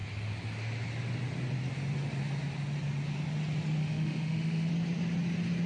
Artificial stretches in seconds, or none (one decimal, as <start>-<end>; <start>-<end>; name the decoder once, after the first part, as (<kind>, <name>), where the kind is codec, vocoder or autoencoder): 3.8-4.7 (autoencoder, DAC-VAE)

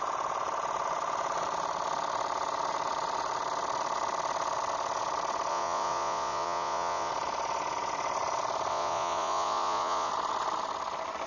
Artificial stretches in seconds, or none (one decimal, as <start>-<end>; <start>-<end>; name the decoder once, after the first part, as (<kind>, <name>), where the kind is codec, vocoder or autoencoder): 5.5-7.1 (vocoder, Vocos); 8.7-10.1

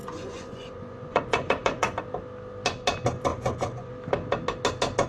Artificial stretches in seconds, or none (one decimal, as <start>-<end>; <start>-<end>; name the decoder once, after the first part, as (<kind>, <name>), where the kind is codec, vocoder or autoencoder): 0.0-2.0 (vocoder, Vocos); 3.3-3.9

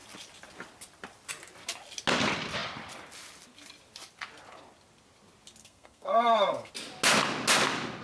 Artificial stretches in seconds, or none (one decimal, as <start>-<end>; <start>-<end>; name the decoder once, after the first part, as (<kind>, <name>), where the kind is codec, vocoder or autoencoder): 5.6-6.7 (codec, SNAC)

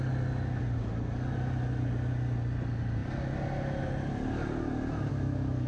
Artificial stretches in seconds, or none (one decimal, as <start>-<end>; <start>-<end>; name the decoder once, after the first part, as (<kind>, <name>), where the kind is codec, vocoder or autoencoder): 5.1-5.7 (codec, DAC)